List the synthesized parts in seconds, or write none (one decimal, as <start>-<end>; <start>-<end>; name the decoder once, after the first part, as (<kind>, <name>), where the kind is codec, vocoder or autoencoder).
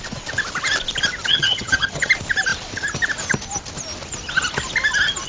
1.3-2.1 (vocoder, HiFi-GAN)